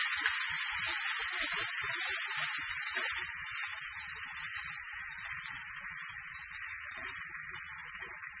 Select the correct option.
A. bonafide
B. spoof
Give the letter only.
A